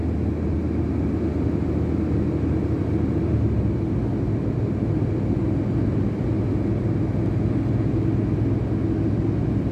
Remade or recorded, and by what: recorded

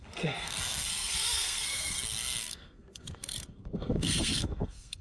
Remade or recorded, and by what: remade, codec, SNAC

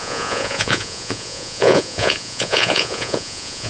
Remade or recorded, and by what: remade, vocoder, Vocos